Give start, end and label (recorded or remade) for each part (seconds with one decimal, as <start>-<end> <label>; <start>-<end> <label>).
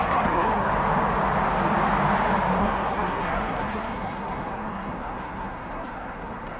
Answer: 0.0-0.7 remade; 0.7-2.6 recorded; 2.6-6.6 remade